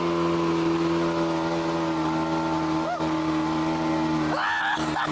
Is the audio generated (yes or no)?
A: no